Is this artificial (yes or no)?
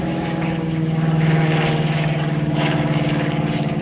yes